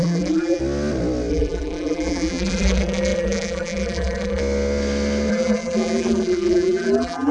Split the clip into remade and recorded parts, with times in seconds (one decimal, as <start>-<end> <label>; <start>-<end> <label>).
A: 0.0-0.6 remade; 0.6-1.3 recorded; 1.3-4.4 remade; 4.4-5.3 recorded; 5.3-7.3 remade